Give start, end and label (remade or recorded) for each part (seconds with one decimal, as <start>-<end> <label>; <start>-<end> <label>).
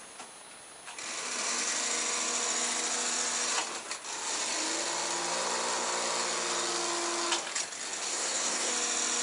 0.0-8.1 recorded; 8.1-8.7 remade; 8.7-9.2 recorded